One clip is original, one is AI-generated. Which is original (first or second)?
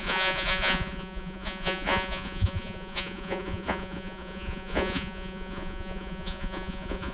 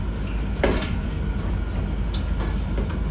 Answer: second